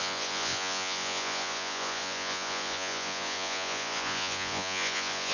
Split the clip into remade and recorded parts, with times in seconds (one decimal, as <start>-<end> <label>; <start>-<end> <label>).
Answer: 0.0-5.3 remade